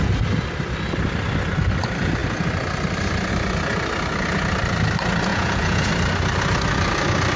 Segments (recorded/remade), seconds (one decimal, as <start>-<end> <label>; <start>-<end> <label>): 0.0-5.3 recorded; 5.3-5.9 remade; 5.9-7.4 recorded